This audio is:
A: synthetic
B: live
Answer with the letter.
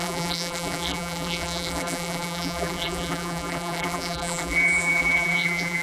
A